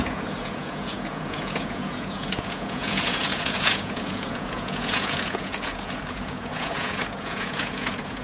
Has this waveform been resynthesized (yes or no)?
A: yes